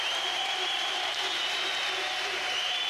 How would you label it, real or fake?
fake